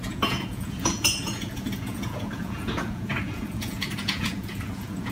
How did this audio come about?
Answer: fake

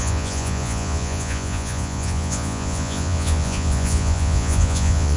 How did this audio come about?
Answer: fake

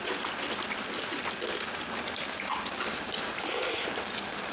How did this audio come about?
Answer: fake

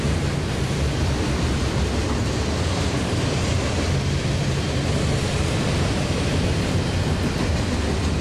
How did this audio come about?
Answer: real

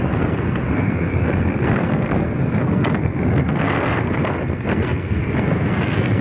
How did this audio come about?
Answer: fake